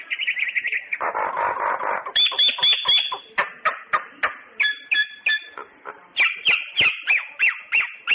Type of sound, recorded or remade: recorded